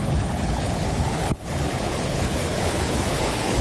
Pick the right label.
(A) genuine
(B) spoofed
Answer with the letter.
B